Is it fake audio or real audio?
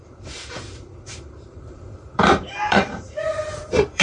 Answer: fake